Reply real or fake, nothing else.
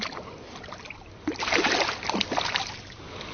real